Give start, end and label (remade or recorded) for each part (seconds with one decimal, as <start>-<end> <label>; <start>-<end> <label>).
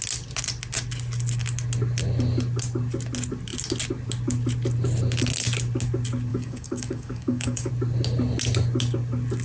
0.0-6.3 recorded; 6.3-7.7 remade; 7.7-9.4 recorded